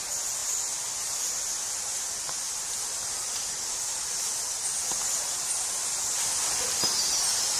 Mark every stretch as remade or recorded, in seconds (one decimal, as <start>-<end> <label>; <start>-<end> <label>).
0.0-7.6 recorded